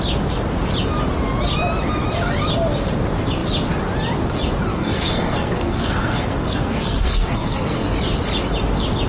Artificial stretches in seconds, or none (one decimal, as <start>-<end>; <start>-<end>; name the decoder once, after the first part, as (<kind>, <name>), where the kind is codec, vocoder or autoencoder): 4.7-7.9 (codec, SNAC)